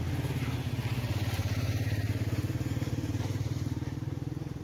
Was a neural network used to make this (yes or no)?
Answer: yes